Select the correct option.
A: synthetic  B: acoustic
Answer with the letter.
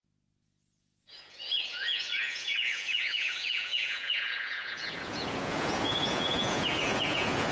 A